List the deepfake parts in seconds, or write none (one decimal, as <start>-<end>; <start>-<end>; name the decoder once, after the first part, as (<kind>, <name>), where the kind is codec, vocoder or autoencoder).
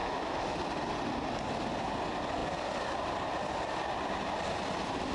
0.0-0.6 (autoencoder, DAC-VAE)